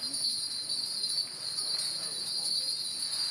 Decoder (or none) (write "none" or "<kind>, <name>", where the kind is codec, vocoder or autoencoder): none